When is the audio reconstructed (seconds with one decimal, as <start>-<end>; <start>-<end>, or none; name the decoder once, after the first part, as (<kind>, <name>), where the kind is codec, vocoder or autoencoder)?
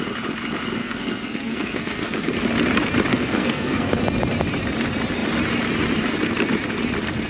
0.8-2.4 (codec, SNAC); 3.1-4.0